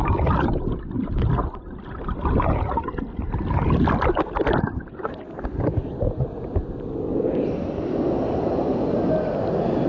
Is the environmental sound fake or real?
real